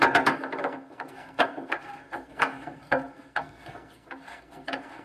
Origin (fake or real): fake